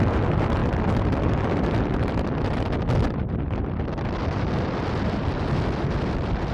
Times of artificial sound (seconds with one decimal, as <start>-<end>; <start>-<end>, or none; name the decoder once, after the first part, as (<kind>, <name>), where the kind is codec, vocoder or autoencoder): none